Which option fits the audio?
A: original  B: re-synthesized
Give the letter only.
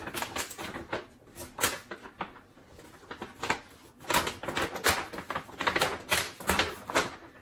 A